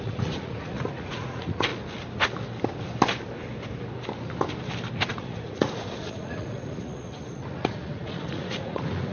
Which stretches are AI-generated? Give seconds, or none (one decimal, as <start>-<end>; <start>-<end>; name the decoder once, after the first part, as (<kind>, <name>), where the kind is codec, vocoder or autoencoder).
0.0-1.7 (vocoder, Vocos); 5.1-9.1